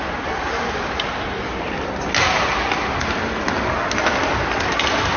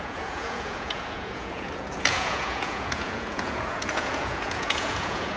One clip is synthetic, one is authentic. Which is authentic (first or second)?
first